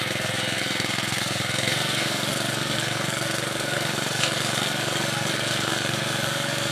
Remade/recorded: remade